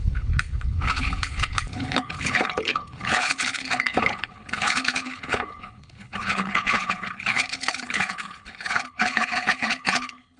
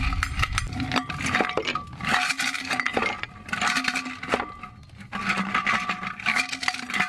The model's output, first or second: first